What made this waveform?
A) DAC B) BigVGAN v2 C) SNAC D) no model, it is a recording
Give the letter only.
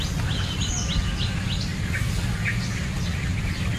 D